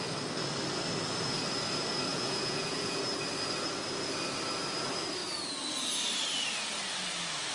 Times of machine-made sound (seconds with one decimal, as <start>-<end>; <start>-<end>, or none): 2.1-3.0